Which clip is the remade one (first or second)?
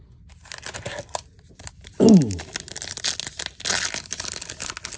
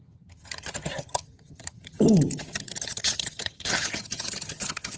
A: second